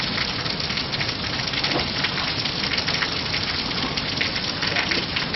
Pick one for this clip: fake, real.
real